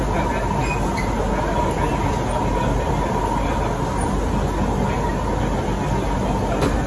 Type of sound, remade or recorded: recorded